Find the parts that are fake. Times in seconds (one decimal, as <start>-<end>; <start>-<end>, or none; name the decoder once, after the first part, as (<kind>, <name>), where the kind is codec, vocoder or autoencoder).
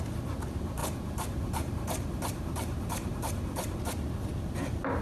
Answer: 0.8-3.8 (vocoder, BigVGAN v2)